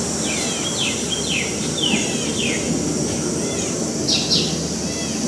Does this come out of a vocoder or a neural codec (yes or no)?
no